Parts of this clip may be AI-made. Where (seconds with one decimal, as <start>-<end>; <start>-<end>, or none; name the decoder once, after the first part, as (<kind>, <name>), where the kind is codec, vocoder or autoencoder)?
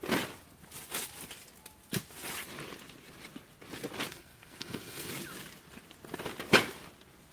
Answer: 4.1-5.1 (codec, SNAC)